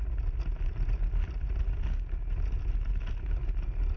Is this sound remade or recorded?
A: recorded